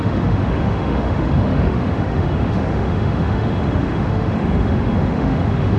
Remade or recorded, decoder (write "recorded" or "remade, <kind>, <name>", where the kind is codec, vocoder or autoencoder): remade, autoencoder, DAC-VAE